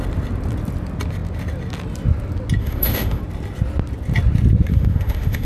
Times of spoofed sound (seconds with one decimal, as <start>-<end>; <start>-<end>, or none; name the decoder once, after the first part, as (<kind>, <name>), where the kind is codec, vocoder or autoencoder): 2.6-3.2 (autoencoder, DAC-VAE); 4.7-5.5